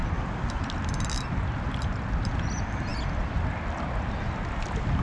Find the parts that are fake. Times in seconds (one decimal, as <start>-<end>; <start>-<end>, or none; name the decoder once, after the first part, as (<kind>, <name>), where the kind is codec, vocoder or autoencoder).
none